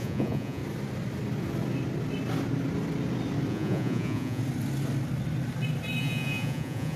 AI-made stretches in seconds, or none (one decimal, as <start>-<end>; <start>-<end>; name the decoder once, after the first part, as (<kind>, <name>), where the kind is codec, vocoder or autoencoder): 0.0-0.6 (vocoder, Vocos); 3.5-4.4; 6.0-7.0